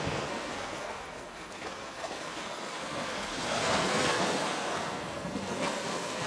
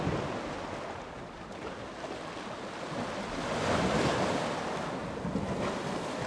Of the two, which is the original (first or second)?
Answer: second